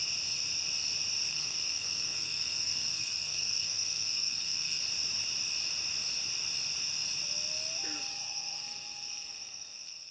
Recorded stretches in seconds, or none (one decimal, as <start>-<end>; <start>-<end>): 0.0-1.3; 4.8-8.1